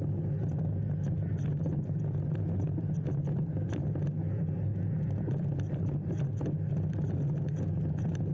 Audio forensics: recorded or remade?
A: recorded